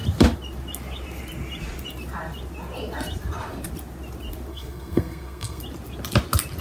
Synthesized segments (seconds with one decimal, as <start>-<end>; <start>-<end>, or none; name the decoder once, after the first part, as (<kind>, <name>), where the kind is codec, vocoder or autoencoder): 4.5-5.6 (codec, SNAC)